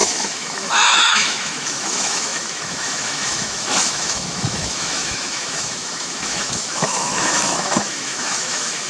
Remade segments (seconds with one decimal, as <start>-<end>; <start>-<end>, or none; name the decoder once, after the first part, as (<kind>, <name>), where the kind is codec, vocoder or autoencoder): 0.0-8.9 (autoencoder, DAC-VAE)